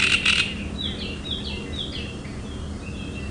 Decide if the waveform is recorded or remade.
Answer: recorded